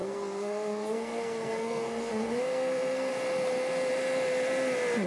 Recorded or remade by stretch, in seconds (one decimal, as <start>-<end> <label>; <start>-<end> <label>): 0.0-3.1 remade; 3.1-5.1 recorded